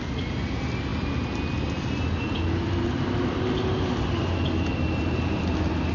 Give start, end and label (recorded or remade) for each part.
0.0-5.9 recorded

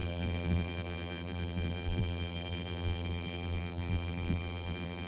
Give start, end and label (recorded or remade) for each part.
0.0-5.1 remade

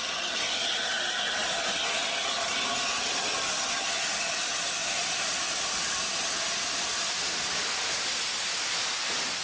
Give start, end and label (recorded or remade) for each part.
0.0-9.4 recorded

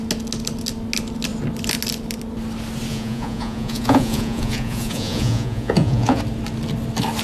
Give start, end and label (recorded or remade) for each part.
0.0-2.9 recorded; 2.9-6.2 remade; 6.2-7.2 recorded

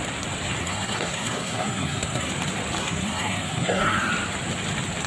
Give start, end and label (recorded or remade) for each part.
0.0-0.6 recorded; 0.6-2.3 remade; 2.3-2.8 recorded; 2.8-4.1 remade; 4.1-5.1 recorded

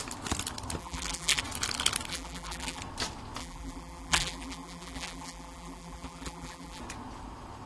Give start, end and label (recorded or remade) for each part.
0.0-0.8 recorded; 0.8-1.4 remade; 1.4-2.1 recorded; 2.1-2.8 remade; 2.8-3.4 recorded; 3.4-6.8 remade; 6.8-7.7 recorded

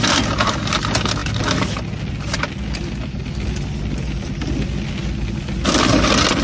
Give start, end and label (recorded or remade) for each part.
0.0-6.4 recorded

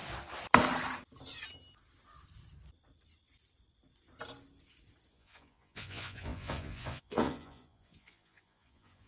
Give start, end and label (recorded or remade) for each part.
0.0-5.1 recorded; 5.1-9.1 remade